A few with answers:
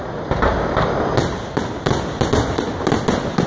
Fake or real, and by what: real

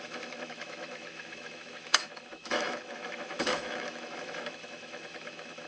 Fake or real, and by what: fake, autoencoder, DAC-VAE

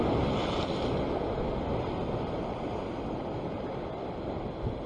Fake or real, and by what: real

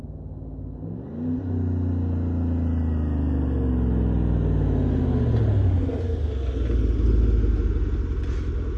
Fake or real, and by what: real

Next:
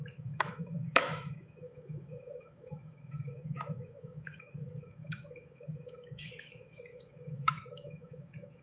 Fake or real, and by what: fake, autoencoder, DAC-VAE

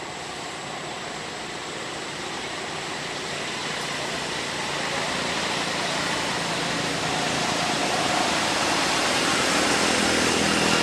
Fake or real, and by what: real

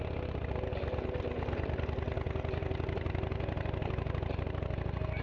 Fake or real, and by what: real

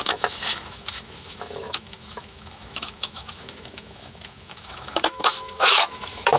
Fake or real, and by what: fake, autoencoder, DAC-VAE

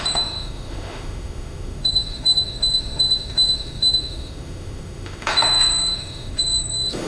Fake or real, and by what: fake, autoencoder, DAC-VAE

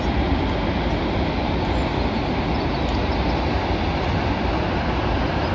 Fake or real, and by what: real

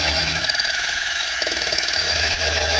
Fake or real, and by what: fake, autoencoder, DAC-VAE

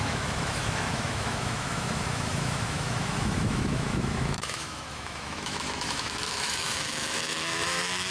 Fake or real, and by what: fake, autoencoder, DAC-VAE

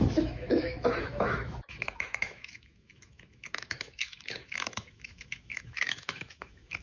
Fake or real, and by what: fake, autoencoder, DAC-VAE